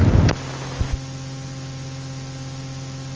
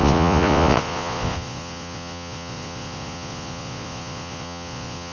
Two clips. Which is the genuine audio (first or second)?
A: first